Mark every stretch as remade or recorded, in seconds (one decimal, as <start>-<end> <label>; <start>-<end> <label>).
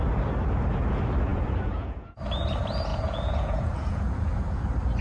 0.0-1.3 recorded; 1.3-2.2 remade; 2.2-2.9 recorded; 2.9-4.6 remade; 4.6-5.0 recorded